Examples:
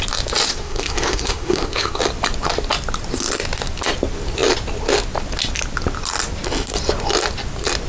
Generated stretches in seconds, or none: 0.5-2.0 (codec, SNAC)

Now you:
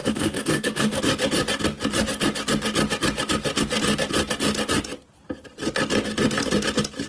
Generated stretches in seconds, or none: 0.0-1.0 (codec, SNAC)

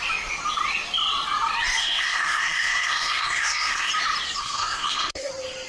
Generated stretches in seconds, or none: 1.8-3.9 (codec, SNAC); 4.4-5.3

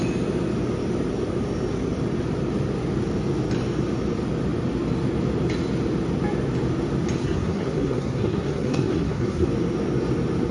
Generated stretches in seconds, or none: 7.2-9.5 (codec, SNAC)

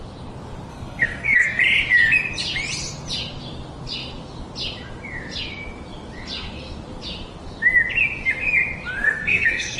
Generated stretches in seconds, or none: 0.7-1.6 (codec, SNAC); 9.0-9.8

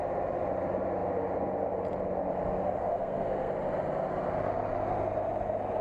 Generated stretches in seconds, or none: 2.8-3.5 (codec, SNAC)

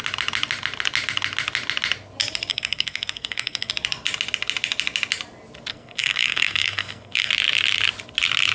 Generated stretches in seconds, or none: 2.5-3.7 (codec, SNAC); 5.7-7.3